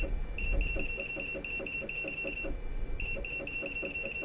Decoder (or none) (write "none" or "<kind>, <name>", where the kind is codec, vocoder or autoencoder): none